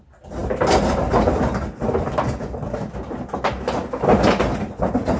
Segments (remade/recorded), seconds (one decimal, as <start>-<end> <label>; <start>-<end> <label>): 0.0-5.2 recorded